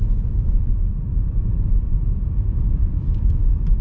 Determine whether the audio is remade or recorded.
recorded